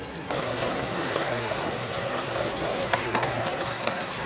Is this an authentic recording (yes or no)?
no